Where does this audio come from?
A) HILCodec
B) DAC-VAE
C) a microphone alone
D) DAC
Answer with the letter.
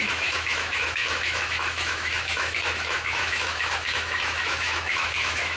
B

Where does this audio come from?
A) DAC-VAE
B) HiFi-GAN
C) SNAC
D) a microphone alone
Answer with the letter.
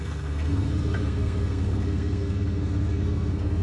C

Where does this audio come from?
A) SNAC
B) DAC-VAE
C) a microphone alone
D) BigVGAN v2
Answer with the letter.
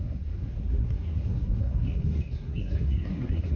A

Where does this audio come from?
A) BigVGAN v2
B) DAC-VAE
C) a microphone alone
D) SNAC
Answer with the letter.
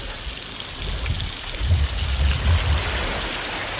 C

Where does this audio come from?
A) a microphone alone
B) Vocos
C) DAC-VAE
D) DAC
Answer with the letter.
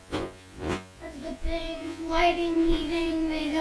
B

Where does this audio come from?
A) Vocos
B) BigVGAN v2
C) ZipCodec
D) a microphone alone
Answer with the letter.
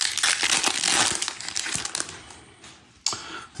D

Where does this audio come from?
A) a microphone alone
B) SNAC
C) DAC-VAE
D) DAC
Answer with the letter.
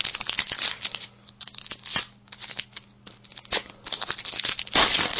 A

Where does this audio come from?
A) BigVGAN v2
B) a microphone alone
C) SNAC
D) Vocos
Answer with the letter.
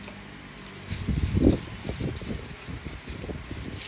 B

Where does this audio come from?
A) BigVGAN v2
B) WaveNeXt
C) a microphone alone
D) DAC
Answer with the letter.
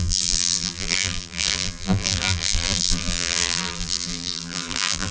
A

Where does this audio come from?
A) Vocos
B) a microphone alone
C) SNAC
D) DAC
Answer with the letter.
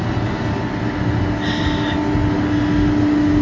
B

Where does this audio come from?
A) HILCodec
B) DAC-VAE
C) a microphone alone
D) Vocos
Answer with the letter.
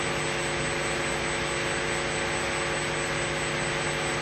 C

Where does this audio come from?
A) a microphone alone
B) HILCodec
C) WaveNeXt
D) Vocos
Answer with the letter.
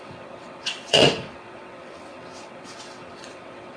C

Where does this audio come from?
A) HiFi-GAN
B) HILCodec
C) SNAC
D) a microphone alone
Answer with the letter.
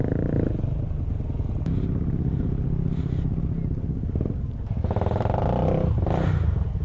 D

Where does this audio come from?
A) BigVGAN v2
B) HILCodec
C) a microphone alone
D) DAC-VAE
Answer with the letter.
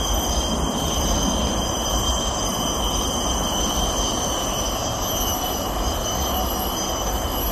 C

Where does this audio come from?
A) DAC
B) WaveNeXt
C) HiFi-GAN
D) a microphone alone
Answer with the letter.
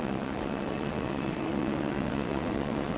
B